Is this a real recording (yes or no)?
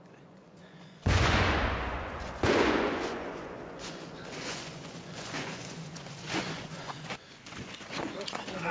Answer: no